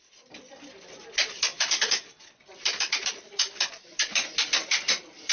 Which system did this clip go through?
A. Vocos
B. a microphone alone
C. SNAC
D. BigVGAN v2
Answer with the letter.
D